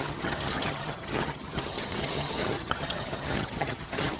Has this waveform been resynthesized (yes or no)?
yes